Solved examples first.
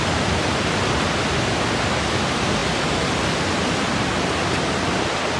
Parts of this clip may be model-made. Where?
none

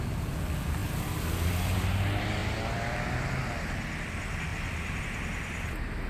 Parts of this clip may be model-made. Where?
2.4-3.4 (vocoder, BigVGAN v2)